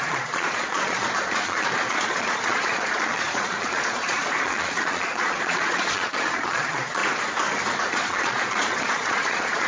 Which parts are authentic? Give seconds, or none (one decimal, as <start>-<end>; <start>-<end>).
7.0-7.9